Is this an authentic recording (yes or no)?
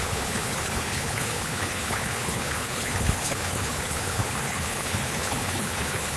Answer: no